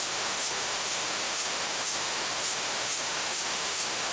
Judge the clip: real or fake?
fake